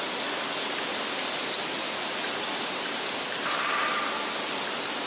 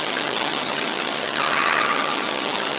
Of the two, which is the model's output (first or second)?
second